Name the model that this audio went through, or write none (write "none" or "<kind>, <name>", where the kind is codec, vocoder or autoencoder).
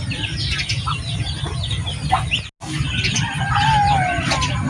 none